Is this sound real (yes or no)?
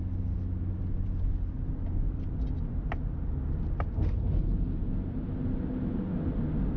yes